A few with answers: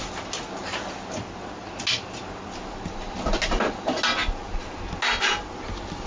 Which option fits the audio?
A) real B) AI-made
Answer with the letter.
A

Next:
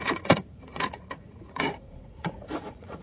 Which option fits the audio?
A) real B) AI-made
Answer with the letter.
B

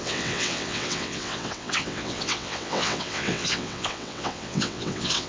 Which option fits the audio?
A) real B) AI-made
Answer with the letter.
B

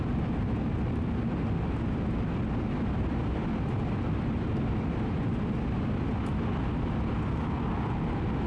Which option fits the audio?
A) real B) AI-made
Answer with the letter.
A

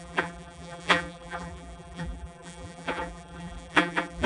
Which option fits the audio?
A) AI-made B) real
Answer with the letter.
A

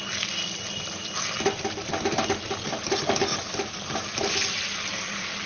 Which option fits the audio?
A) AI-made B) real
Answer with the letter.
B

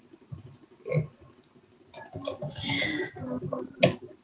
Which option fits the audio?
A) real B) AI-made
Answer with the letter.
A